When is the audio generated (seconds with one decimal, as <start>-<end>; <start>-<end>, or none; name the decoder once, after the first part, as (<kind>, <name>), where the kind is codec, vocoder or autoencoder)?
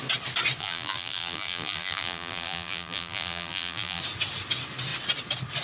0.6-4.0 (vocoder, BigVGAN v2)